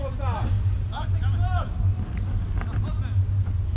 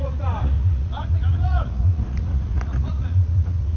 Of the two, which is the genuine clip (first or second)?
first